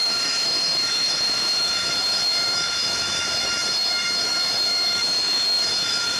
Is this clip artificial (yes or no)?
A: yes